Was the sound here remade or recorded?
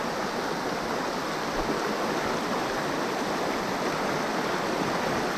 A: recorded